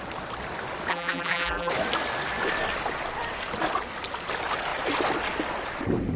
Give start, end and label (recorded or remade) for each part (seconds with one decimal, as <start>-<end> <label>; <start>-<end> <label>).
0.0-0.9 recorded; 0.9-1.7 remade; 1.7-6.2 recorded